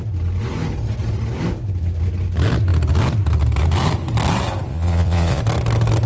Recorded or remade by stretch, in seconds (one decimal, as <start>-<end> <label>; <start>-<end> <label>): 0.0-4.7 recorded; 4.7-5.4 remade; 5.4-6.1 recorded